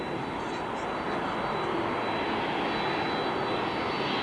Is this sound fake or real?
real